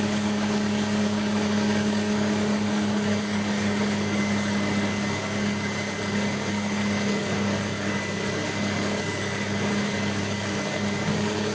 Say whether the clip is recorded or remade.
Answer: remade